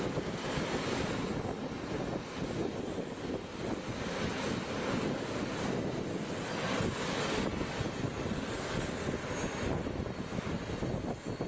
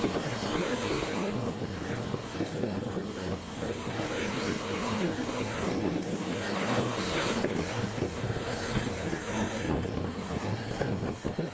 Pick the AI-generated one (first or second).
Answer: second